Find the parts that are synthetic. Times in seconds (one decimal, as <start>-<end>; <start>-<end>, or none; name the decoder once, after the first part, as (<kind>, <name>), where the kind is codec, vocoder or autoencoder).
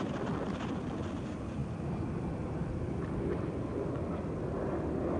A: none